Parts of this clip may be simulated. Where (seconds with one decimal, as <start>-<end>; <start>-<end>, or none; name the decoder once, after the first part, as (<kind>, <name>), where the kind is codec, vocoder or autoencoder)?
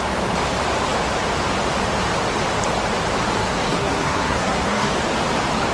3.4-4.9 (codec, SNAC)